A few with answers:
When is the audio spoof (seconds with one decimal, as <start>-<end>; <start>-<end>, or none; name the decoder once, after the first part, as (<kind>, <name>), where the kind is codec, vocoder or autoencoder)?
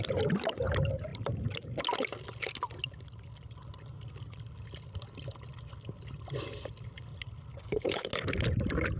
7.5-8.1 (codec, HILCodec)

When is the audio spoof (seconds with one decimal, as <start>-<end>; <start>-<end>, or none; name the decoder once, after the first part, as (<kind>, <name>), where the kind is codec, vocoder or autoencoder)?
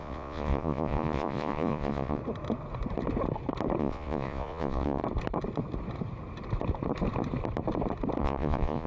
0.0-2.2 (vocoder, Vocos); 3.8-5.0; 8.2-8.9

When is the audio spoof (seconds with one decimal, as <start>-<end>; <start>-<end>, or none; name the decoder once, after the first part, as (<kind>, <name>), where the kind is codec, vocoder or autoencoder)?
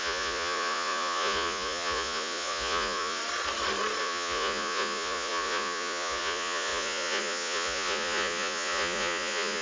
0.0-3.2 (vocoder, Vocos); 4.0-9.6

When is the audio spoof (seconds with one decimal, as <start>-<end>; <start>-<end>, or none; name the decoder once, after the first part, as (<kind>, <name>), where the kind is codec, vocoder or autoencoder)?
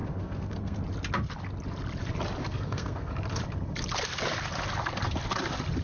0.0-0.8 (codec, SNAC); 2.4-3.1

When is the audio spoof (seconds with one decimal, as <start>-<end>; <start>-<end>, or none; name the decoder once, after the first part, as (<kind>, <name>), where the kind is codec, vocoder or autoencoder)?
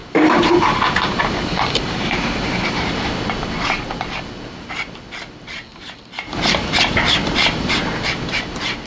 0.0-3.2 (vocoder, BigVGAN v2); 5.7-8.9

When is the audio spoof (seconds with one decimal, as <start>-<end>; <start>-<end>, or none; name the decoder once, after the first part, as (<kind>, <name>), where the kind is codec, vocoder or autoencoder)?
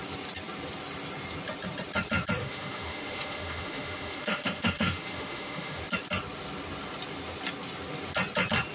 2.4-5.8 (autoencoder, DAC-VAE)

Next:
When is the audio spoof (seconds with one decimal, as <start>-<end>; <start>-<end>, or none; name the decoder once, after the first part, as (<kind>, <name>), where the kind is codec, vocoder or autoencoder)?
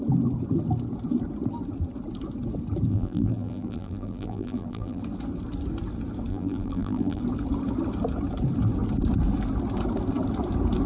2.9-5.0 (vocoder, BigVGAN v2); 6.3-7.2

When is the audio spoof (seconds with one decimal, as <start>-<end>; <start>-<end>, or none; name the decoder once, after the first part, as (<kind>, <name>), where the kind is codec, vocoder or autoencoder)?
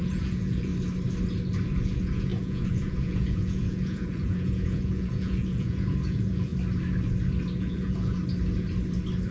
0.0-0.7 (vocoder, Vocos); 1.7-6.5; 7.6-8.2